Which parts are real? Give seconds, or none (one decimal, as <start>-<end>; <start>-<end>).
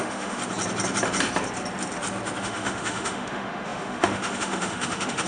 0.4-2.4